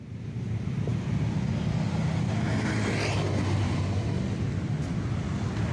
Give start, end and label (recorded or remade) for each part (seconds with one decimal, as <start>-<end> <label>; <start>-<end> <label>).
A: 0.0-5.7 recorded